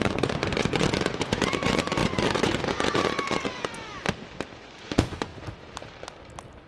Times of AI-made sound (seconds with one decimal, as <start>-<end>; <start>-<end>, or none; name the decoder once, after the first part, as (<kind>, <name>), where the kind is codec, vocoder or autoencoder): 0.0-3.9 (vocoder, Vocos); 4.5-5.3